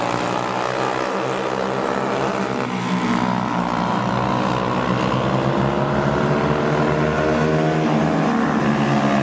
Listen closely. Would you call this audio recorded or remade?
recorded